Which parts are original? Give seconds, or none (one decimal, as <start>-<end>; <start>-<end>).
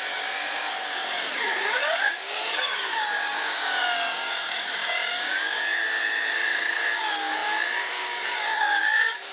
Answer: none